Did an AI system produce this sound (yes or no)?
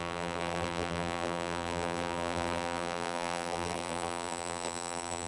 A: yes